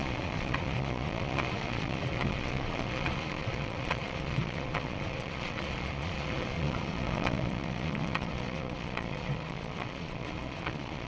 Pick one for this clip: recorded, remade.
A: remade